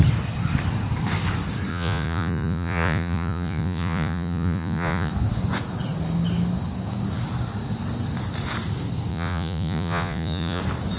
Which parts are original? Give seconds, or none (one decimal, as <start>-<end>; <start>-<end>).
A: 0.0-1.7; 5.1-9.1; 10.6-11.0